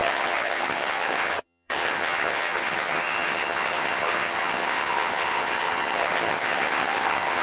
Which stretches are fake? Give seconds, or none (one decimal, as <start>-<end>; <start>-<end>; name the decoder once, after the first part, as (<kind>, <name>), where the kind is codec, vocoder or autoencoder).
0.0-7.4 (vocoder, HiFi-GAN)

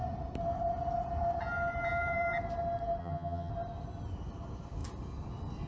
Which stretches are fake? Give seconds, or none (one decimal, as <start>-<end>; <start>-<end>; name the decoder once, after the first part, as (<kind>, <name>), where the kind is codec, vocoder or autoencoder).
3.0-3.5 (vocoder, HiFi-GAN)

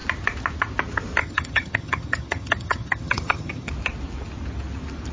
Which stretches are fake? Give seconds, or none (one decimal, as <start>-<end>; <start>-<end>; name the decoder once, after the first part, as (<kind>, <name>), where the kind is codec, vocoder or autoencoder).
1.2-3.7 (vocoder, HiFi-GAN)

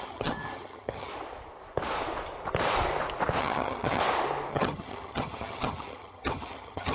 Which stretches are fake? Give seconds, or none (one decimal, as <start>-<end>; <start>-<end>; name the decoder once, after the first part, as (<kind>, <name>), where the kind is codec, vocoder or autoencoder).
0.0-1.1 (vocoder, HiFi-GAN); 3.4-4.0; 4.5-6.9